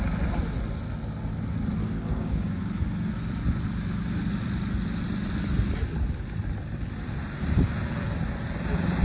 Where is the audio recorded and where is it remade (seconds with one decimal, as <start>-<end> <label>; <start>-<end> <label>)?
0.0-1.8 recorded; 1.8-3.1 remade; 3.1-9.0 recorded